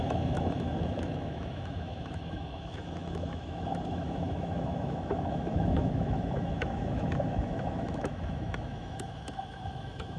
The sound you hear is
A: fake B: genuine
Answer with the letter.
A